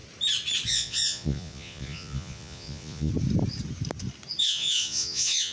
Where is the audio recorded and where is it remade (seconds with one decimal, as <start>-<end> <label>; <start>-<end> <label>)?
0.0-0.7 recorded; 0.7-3.1 remade; 3.1-4.4 recorded; 4.4-5.5 remade